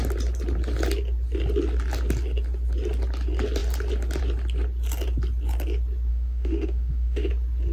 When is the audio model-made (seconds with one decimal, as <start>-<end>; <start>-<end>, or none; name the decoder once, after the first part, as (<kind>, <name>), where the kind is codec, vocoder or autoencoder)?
6.1-7.3 (autoencoder, DAC-VAE)